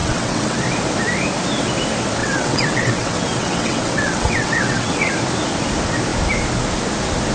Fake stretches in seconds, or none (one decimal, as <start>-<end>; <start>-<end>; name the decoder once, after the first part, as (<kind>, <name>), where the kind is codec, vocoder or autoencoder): 0.0-0.6 (vocoder, WaveNeXt); 2.2-5.1